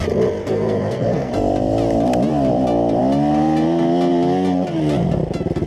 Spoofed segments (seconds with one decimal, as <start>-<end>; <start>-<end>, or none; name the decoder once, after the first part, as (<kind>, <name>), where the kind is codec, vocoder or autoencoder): 0.4-1.3 (codec, SNAC)